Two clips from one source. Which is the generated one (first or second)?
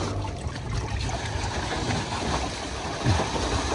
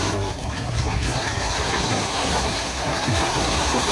second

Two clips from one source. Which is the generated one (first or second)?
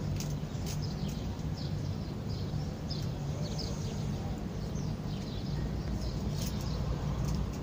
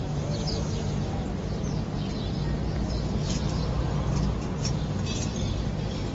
first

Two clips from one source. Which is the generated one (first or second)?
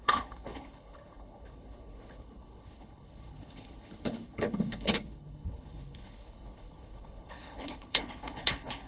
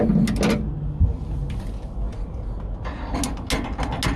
first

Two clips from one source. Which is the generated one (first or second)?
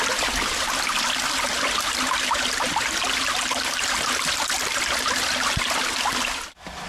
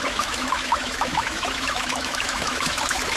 second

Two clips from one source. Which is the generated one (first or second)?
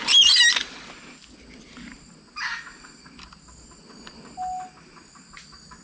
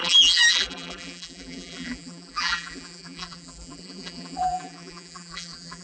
second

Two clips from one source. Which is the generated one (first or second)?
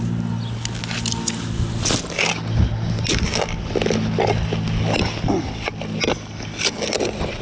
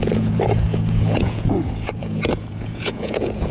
second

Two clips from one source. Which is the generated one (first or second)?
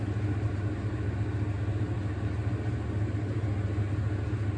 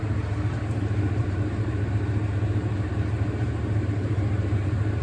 second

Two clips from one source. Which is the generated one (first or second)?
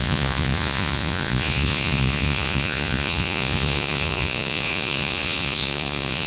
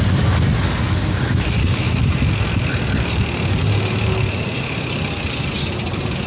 first